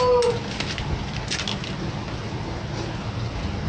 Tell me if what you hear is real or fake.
real